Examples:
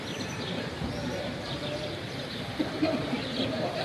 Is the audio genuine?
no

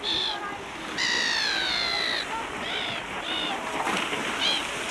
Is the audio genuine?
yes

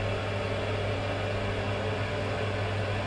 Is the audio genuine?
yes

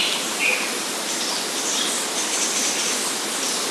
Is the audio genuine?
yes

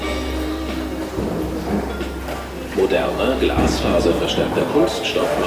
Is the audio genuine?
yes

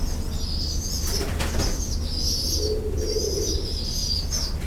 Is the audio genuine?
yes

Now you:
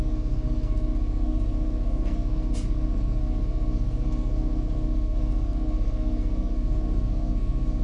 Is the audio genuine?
no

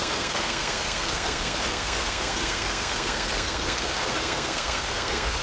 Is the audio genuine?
no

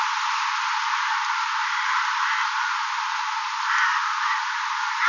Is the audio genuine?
yes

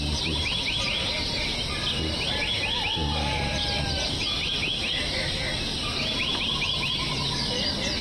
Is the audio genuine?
yes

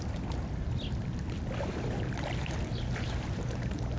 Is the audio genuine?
yes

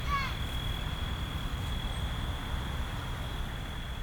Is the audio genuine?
yes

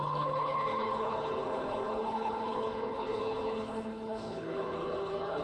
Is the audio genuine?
no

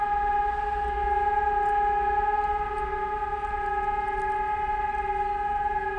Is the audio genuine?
yes